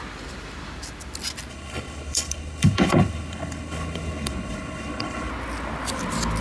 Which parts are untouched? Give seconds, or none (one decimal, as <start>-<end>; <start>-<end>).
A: 0.0-1.5; 5.3-6.4